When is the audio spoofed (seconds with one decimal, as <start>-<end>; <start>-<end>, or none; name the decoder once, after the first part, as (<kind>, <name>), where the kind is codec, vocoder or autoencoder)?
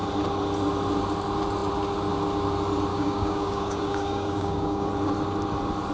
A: 2.9-4.9 (codec, DAC)